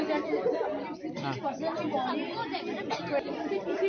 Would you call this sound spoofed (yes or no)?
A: no